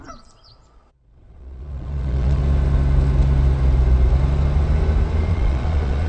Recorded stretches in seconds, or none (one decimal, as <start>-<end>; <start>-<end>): 2.4-5.3